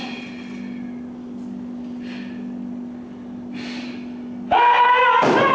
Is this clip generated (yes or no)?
no